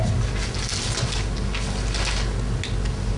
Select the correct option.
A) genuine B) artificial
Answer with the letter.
A